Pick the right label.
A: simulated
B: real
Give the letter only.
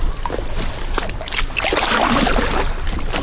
B